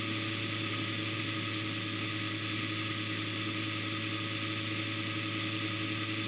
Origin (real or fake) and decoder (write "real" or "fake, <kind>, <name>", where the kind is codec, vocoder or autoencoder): real